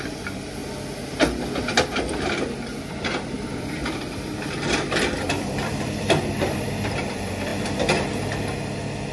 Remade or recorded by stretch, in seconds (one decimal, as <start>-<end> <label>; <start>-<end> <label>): 0.0-0.6 remade; 0.6-1.6 recorded; 1.6-7.5 remade; 7.5-9.1 recorded